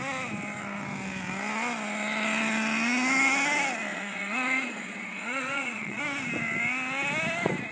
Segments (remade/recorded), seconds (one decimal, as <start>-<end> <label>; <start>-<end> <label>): 0.0-3.9 recorded; 3.9-6.0 remade; 6.0-7.7 recorded

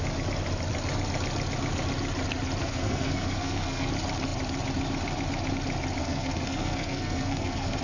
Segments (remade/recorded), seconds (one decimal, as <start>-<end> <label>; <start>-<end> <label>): 0.0-2.6 recorded; 2.6-3.9 remade; 3.9-6.0 recorded; 6.0-7.8 remade

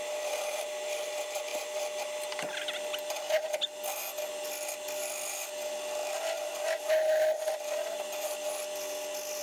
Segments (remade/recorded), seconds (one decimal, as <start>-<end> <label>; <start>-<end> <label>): 0.0-9.4 recorded